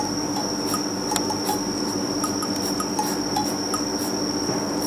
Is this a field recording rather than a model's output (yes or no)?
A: yes